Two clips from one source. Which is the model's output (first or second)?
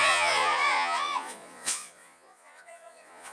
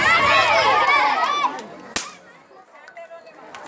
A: first